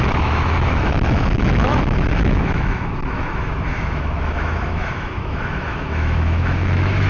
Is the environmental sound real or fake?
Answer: fake